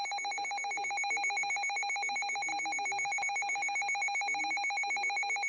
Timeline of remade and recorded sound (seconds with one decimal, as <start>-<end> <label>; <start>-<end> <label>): 0.0-5.5 recorded